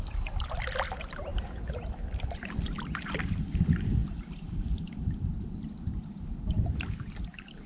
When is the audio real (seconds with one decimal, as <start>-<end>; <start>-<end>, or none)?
none